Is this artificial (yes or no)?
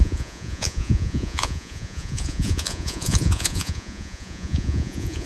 yes